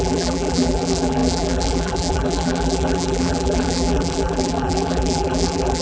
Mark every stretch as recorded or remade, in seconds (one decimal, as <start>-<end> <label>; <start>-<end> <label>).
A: 0.0-5.8 remade